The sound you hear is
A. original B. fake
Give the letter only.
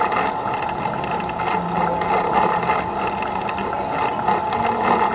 A